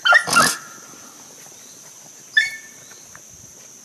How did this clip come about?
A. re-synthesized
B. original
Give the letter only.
B